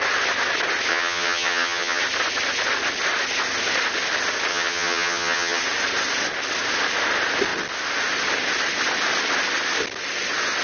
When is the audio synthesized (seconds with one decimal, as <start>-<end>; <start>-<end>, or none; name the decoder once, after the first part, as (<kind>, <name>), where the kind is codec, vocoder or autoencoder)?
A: 0.9-2.0 (vocoder, HiFi-GAN); 4.5-5.6